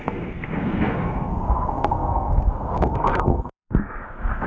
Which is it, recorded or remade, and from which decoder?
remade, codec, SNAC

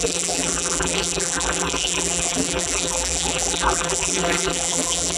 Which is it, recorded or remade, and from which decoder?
remade, vocoder, BigVGAN v2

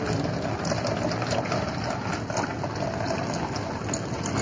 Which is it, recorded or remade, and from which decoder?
recorded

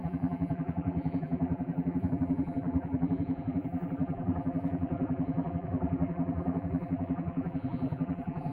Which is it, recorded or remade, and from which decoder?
remade, vocoder, BigVGAN v2